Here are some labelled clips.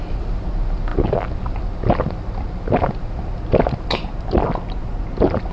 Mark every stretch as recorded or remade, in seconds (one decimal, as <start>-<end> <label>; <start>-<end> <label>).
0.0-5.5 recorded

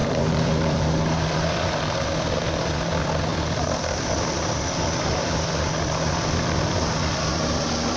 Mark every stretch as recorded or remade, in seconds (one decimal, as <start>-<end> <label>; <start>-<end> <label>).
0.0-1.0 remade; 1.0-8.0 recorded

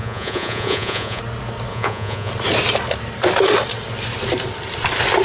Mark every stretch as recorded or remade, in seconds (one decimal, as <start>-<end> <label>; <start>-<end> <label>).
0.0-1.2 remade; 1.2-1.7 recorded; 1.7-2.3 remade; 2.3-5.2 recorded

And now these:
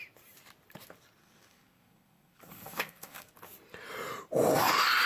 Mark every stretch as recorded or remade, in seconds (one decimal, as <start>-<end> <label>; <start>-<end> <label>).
0.0-1.2 recorded; 1.2-3.3 remade; 3.3-5.1 recorded

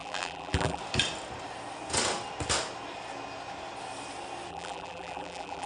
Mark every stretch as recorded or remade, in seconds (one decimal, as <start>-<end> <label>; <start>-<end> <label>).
0.0-0.8 remade; 0.8-4.5 recorded; 4.5-5.7 remade